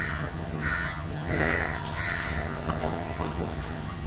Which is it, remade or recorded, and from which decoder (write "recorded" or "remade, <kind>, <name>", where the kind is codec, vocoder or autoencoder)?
remade, vocoder, HiFi-GAN